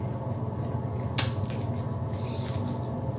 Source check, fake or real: real